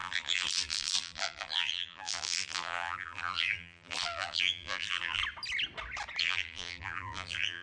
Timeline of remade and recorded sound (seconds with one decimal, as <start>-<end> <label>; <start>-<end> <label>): 0.0-5.2 remade; 5.2-6.2 recorded; 6.2-7.6 remade